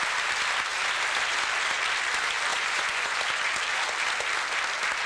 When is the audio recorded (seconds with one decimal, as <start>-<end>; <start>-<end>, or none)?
0.0-2.5; 3.2-5.1